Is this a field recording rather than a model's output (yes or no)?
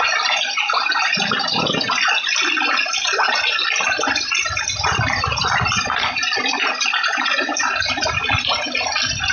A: yes